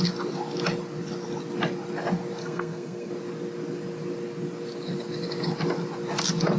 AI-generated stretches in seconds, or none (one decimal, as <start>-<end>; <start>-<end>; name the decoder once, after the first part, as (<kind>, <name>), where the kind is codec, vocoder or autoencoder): 2.4-3.1 (codec, SNAC)